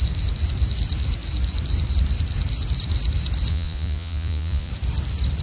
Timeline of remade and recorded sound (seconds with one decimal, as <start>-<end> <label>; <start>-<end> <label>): 0.0-3.5 recorded; 3.5-4.7 remade; 4.7-5.4 recorded